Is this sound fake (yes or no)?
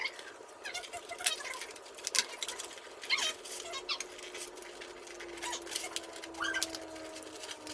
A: no